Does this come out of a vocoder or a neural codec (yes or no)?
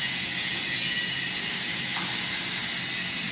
no